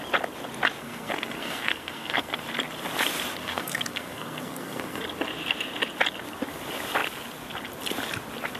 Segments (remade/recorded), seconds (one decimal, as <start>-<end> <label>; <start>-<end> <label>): 0.0-0.8 recorded; 0.8-2.4 remade; 2.4-3.4 recorded; 3.4-5.0 remade; 5.0-8.6 recorded